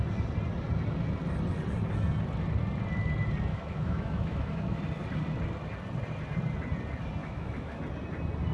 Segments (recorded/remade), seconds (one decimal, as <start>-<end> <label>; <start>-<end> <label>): 0.0-3.5 recorded; 3.5-4.8 remade; 4.8-7.2 recorded; 7.2-7.8 remade; 7.8-8.5 recorded